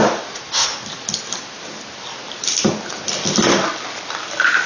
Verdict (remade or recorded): recorded